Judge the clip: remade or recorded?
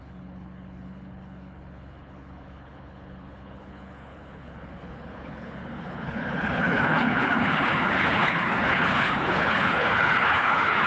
remade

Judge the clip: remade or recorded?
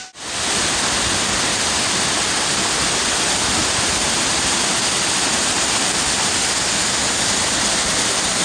recorded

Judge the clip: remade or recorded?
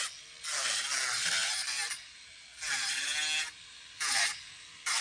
recorded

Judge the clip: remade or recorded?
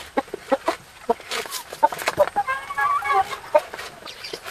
recorded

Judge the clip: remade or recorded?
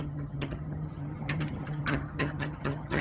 remade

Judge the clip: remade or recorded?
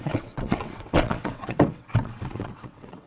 remade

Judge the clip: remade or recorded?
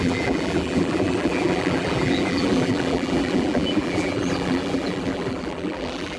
remade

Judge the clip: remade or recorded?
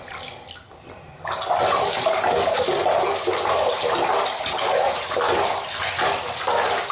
recorded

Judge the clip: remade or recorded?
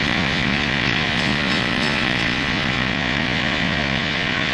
remade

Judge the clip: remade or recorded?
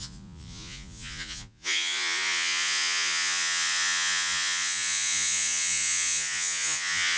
remade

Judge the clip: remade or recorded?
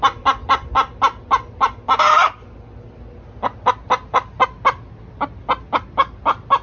recorded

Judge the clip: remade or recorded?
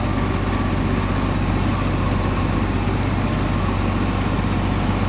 recorded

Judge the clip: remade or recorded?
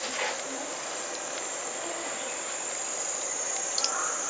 recorded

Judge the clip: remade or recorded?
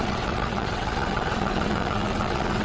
remade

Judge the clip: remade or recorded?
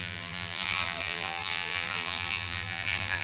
remade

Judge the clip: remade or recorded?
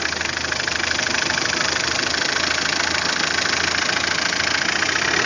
recorded